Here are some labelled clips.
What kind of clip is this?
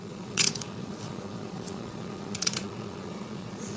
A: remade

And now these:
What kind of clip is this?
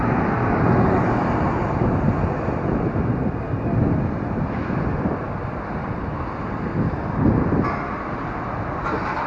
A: recorded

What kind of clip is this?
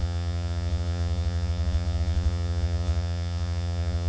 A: remade